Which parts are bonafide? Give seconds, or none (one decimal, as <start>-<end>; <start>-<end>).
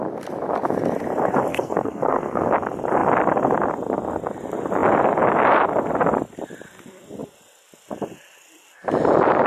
0.0-1.5; 2.5-9.5